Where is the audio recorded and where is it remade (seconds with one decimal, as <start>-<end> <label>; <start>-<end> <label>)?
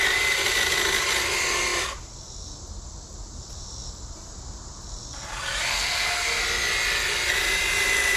0.0-5.7 recorded; 5.7-6.4 remade; 6.4-8.2 recorded